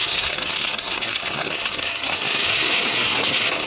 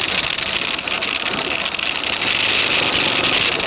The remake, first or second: first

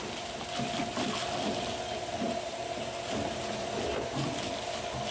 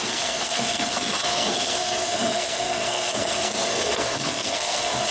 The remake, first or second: second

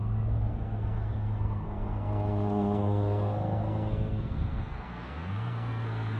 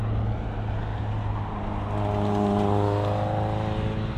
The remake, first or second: first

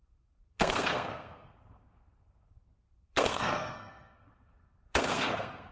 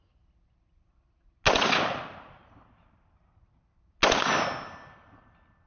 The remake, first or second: first